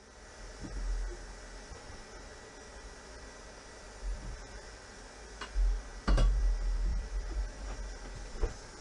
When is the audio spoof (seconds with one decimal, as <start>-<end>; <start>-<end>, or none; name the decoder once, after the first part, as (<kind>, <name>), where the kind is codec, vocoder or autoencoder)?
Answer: 2.7-4.8 (vocoder, BigVGAN v2); 6.9-7.4